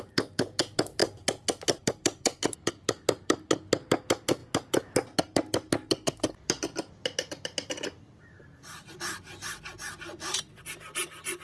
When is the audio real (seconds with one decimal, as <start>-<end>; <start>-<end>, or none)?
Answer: 0.0-11.4